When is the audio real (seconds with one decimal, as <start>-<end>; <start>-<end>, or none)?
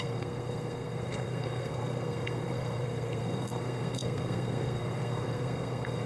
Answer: none